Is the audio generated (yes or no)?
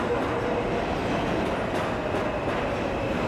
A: no